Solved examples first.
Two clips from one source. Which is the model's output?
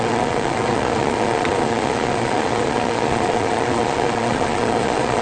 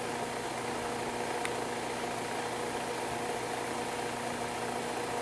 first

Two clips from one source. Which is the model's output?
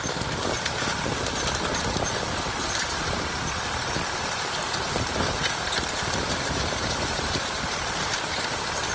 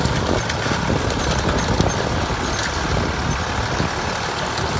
first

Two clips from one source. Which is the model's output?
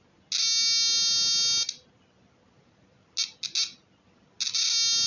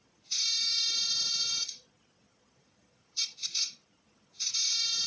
second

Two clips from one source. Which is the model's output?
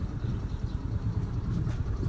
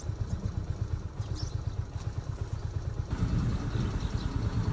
first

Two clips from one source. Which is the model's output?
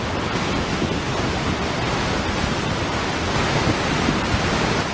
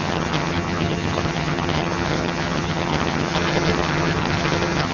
second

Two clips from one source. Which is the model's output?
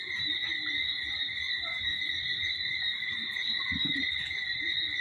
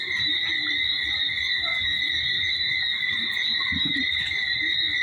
first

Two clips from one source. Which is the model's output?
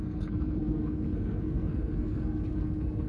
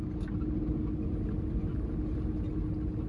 first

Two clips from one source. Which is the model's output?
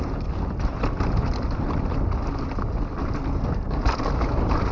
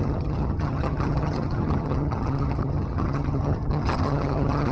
second